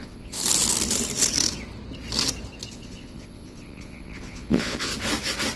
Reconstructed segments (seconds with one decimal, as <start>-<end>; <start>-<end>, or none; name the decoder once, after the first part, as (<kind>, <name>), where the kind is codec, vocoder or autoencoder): 0.0-0.4 (vocoder, Vocos); 2.7-4.9